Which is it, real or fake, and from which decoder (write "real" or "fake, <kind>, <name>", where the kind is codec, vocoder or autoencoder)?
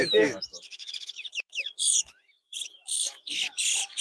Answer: fake, autoencoder, DAC-VAE